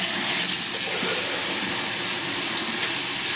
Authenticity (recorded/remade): recorded